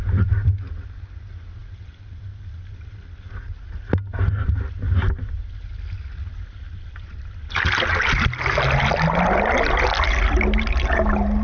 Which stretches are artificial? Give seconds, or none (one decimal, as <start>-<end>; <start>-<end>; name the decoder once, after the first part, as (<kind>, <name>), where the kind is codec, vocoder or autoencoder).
none